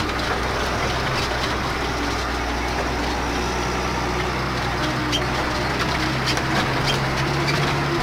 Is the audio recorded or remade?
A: recorded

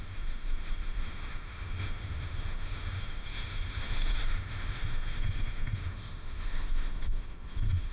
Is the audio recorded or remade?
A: remade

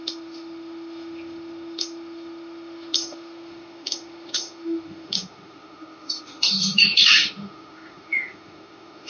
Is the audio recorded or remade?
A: remade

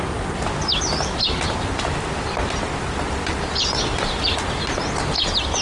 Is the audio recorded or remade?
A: recorded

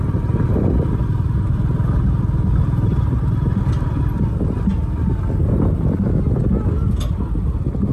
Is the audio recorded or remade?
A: recorded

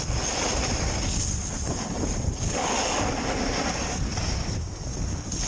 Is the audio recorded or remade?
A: recorded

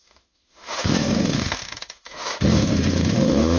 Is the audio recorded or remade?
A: remade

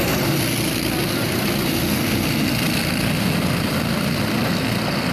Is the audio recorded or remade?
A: recorded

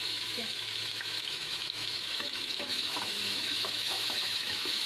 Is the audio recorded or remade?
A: remade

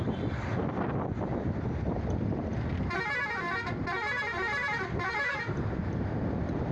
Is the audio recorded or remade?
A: recorded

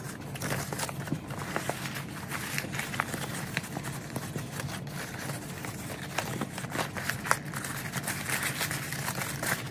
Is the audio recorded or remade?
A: recorded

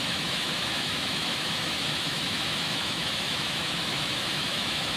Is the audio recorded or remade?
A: remade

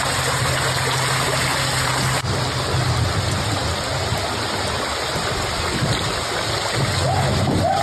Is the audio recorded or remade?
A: recorded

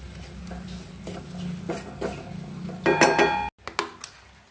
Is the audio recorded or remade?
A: recorded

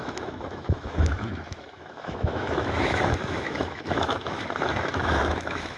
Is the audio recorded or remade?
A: remade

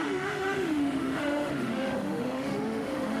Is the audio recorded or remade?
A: remade